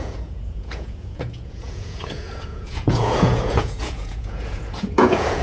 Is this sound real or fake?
fake